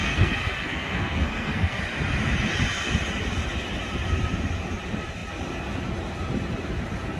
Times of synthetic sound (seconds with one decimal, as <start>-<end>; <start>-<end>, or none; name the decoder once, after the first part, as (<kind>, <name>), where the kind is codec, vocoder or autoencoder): 0.0-1.8 (codec, SNAC)